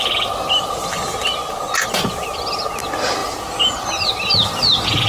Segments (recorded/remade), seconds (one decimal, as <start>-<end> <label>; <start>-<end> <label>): 0.0-3.2 recorded; 3.2-4.1 remade; 4.1-5.1 recorded